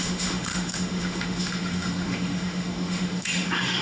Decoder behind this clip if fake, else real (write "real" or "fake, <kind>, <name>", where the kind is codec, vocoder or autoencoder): fake, autoencoder, DAC-VAE